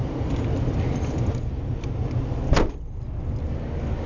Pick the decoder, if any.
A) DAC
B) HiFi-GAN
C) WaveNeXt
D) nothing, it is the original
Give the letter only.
D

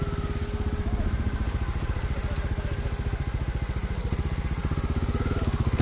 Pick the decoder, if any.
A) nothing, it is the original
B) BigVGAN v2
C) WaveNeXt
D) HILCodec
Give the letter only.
A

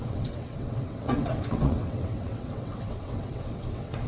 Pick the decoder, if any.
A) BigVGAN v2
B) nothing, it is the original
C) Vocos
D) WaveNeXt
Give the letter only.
D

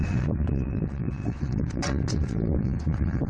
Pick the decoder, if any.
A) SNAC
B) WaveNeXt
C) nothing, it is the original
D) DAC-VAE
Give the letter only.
B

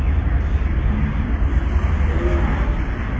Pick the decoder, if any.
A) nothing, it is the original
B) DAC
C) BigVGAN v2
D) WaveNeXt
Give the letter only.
A